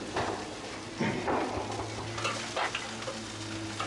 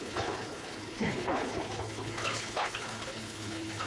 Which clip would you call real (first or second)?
first